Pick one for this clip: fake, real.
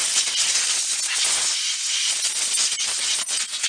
real